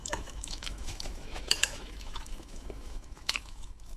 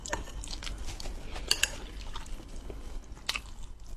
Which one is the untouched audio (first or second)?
second